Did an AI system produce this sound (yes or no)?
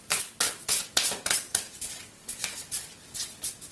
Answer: no